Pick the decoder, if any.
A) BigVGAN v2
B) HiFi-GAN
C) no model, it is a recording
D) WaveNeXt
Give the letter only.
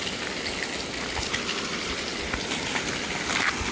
C